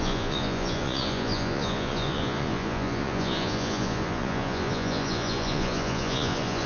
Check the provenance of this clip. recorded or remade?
remade